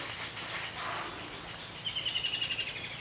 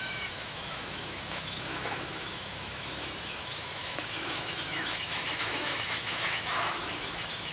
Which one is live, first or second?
first